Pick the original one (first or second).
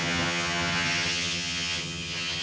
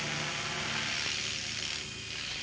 second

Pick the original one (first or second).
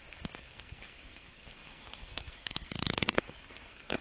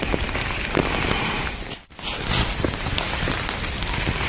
second